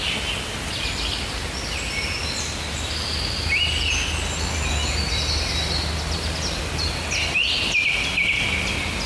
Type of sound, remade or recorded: recorded